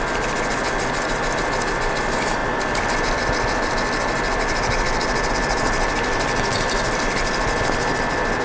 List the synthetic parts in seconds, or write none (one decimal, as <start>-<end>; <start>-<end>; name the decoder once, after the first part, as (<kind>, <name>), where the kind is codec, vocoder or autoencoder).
none